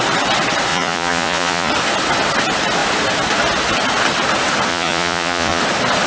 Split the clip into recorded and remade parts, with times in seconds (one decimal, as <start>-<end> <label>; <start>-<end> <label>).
0.0-0.7 recorded; 0.7-1.7 remade; 1.7-4.7 recorded; 4.7-5.6 remade; 5.6-6.1 recorded